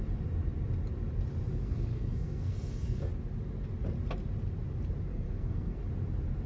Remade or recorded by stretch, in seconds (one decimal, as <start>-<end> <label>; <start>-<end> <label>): 0.0-1.5 recorded; 1.5-3.1 remade; 3.1-5.1 recorded; 5.1-5.8 remade; 5.8-6.5 recorded